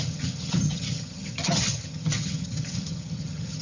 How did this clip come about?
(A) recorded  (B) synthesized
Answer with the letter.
B